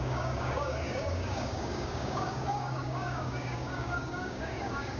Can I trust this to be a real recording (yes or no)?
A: no